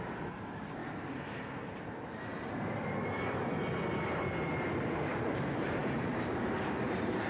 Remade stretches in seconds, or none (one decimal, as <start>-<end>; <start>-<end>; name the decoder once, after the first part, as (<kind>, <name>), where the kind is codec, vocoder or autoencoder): 0.0-0.8 (vocoder, BigVGAN v2); 4.7-7.3